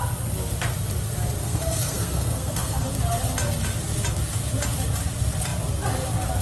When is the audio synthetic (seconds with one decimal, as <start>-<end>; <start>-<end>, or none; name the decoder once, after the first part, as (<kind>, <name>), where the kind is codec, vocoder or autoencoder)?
1.4-2.9 (codec, SNAC)